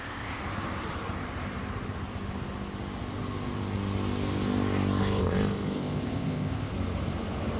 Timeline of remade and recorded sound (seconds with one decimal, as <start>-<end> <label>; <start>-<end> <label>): 0.0-0.4 remade; 0.4-5.0 recorded; 5.0-6.7 remade; 6.7-7.6 recorded